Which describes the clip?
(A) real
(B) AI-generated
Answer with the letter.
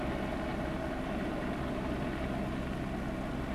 A